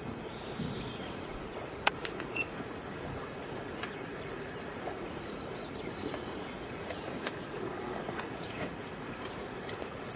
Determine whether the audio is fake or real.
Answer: fake